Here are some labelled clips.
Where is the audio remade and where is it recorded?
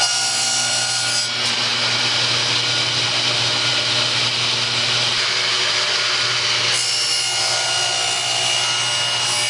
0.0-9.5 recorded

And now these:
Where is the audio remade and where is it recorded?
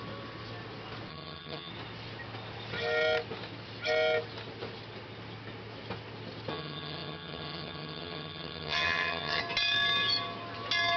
0.0-1.1 recorded; 1.1-1.7 remade; 1.7-6.5 recorded; 6.5-9.4 remade; 9.4-11.0 recorded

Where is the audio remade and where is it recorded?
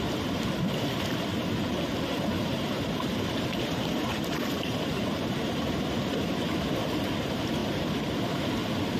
0.0-1.6 recorded; 1.6-6.5 remade; 6.5-7.6 recorded; 7.6-8.1 remade; 8.1-9.0 recorded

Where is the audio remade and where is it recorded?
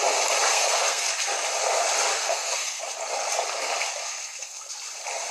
0.0-0.5 recorded; 0.5-1.1 remade; 1.1-2.1 recorded; 2.1-2.8 remade; 2.8-4.0 recorded; 4.0-4.7 remade; 4.7-5.3 recorded